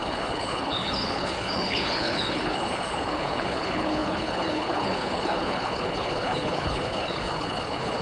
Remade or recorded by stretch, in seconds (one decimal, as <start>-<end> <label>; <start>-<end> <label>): 0.0-8.0 remade